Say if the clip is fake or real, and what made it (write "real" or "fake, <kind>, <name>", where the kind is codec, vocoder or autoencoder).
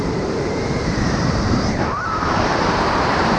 fake, vocoder, BigVGAN v2